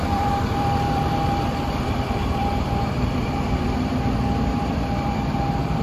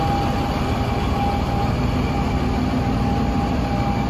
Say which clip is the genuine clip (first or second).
second